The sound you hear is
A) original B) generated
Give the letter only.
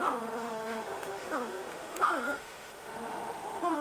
B